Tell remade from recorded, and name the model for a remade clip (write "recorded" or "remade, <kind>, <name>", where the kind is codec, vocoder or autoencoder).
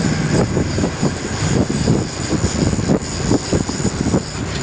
remade, vocoder, BigVGAN v2